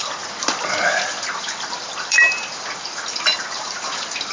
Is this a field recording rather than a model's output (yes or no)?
no